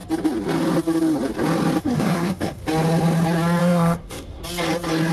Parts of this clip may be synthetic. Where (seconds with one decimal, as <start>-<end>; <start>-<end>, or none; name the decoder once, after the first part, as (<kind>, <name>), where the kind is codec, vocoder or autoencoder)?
1.8-2.6 (codec, SNAC); 3.6-4.4